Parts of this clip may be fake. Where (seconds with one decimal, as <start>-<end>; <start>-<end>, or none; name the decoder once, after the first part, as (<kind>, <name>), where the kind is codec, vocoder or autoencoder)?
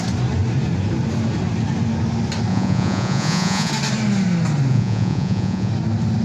2.5-3.7 (vocoder, Vocos); 4.7-5.7